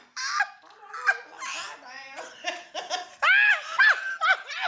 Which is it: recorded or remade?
recorded